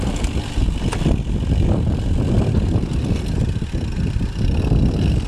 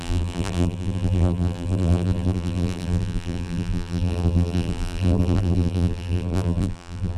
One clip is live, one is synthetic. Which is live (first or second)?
first